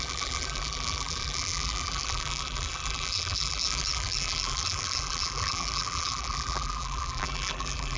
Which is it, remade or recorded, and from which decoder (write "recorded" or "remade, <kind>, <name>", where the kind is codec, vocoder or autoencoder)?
remade, vocoder, BigVGAN v2